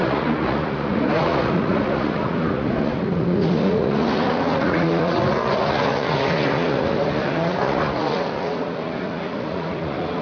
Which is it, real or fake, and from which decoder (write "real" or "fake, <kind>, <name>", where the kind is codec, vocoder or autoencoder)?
fake, vocoder, Vocos